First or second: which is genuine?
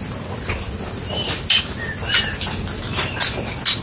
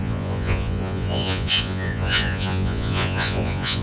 first